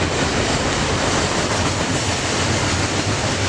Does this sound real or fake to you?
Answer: real